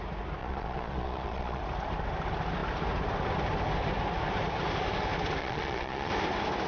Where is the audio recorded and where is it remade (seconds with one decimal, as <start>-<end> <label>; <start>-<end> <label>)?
0.0-0.4 recorded; 0.4-1.6 remade; 1.6-5.4 recorded; 5.4-6.1 remade; 6.1-6.7 recorded